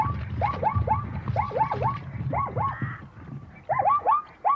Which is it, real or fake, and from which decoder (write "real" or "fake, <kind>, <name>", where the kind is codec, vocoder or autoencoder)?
real